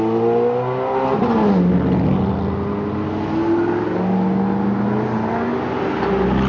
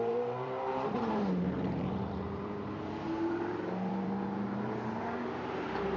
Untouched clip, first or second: first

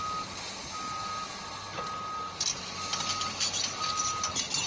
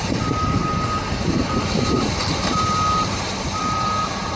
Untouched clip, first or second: first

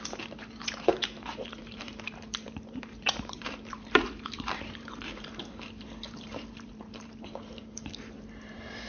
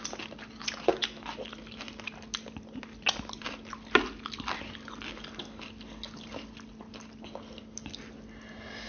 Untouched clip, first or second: second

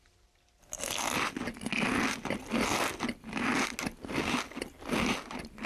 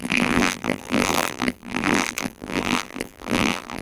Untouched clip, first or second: first